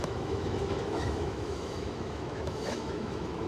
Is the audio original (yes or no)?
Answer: no